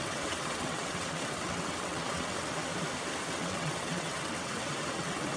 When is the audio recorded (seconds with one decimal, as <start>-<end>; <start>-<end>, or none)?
2.7-3.3

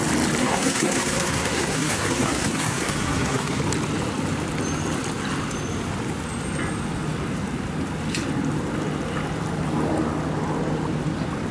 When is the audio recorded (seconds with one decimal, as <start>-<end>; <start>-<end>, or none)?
0.0-0.4; 3.6-11.5

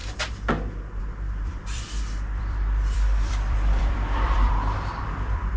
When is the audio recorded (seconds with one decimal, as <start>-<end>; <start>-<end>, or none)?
0.0-1.0

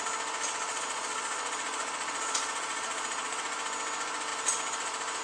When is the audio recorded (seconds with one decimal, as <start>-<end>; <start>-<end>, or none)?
0.0-0.7; 3.4-5.2